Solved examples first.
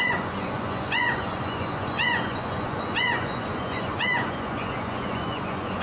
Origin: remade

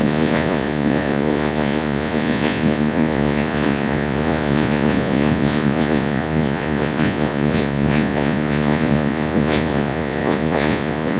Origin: remade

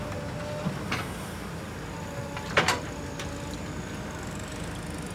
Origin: recorded